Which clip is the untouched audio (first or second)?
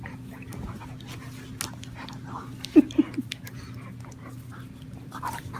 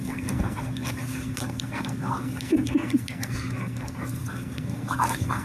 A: first